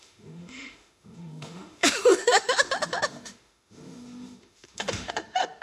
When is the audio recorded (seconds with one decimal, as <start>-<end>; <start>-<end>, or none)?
none